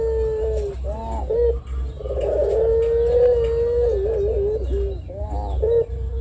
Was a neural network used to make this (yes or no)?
no